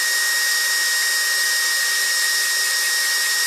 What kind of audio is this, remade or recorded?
recorded